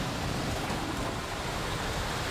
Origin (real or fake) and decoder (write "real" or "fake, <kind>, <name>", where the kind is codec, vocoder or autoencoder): fake, vocoder, BigVGAN v2